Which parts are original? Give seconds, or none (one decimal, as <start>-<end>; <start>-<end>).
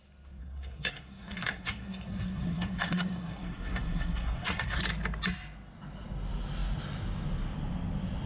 0.0-0.4; 4.8-8.3